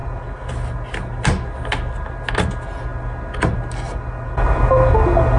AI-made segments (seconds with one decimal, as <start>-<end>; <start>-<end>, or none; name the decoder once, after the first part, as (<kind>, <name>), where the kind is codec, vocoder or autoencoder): none